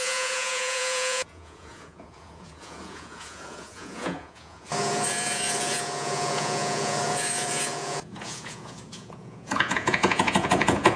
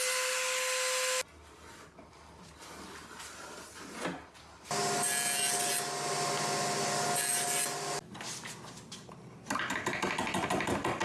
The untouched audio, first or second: second